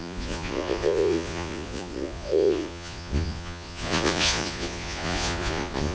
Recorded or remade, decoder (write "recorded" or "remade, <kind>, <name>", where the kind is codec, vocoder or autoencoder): remade, vocoder, Vocos